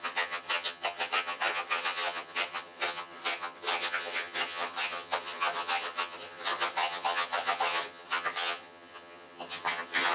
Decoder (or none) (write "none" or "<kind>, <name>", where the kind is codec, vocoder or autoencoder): vocoder, HiFi-GAN